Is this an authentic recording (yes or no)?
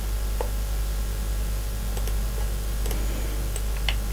yes